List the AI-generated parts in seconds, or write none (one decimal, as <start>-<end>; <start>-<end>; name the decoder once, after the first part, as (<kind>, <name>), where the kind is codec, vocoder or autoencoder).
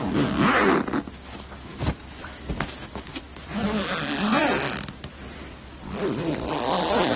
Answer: 1.7-2.5 (vocoder, BigVGAN v2)